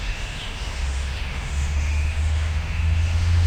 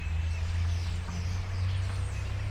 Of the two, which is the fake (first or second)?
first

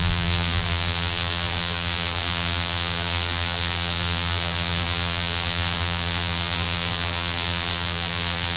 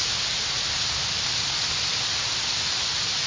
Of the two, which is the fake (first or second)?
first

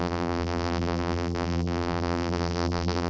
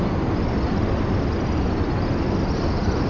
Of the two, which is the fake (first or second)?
first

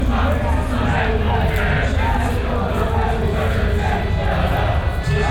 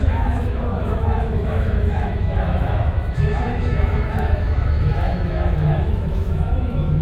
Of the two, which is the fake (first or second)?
second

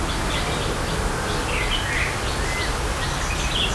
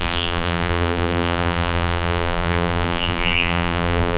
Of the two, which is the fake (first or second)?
second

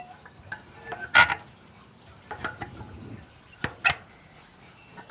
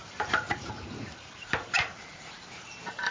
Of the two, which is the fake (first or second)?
second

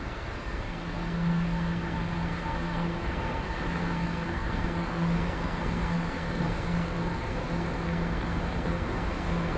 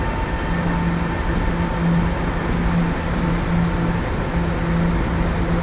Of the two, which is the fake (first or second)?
first